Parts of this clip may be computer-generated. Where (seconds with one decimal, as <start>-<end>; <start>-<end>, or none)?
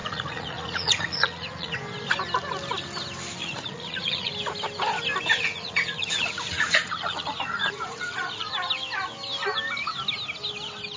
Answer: 0.0-1.7; 3.4-4.3; 5.4-8.5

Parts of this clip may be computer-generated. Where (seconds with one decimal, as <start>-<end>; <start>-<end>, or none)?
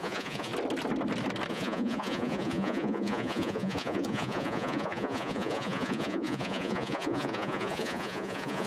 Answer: 0.0-0.5; 1.5-8.7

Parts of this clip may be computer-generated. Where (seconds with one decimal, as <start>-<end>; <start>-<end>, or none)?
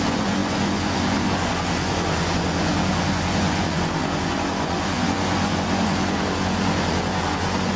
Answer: 0.0-7.8